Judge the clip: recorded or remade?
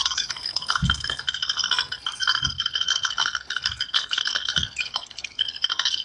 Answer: remade